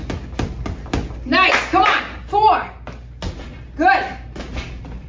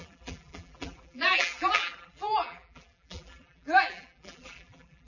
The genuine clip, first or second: first